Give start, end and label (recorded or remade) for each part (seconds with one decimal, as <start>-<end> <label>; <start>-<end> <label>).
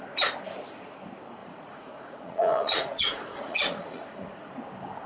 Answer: 0.0-1.4 recorded; 1.4-4.5 remade; 4.5-5.1 recorded